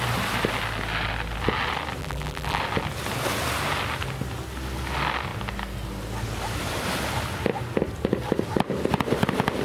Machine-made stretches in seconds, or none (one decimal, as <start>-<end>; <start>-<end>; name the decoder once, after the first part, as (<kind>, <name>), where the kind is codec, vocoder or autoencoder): 2.0-2.6 (vocoder, BigVGAN v2)